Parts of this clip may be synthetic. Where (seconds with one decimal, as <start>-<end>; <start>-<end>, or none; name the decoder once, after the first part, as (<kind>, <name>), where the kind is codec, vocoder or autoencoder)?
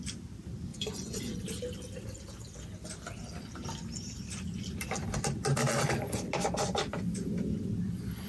0.7-1.3 (vocoder, Vocos)